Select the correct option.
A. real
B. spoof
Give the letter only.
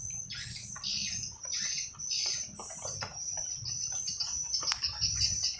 A